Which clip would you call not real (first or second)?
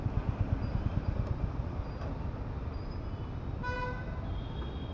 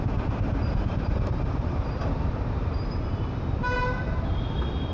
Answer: second